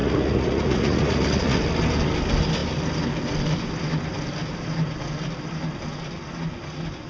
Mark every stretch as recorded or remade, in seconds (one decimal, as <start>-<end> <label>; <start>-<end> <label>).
0.0-1.6 remade; 1.6-7.1 recorded